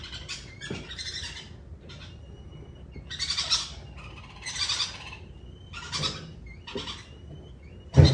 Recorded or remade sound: recorded